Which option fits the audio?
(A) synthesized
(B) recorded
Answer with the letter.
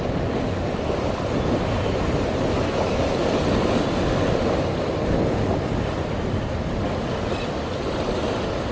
B